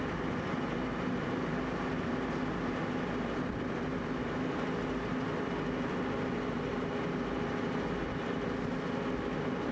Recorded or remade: recorded